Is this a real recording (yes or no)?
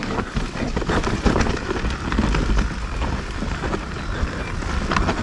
yes